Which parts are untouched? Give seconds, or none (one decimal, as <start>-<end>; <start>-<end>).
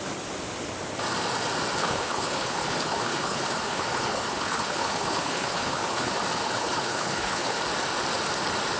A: 0.0-1.8; 6.1-6.6; 7.6-8.8